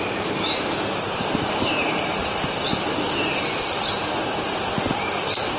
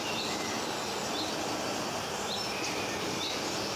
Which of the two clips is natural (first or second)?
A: second